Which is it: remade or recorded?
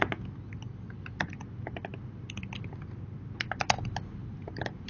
recorded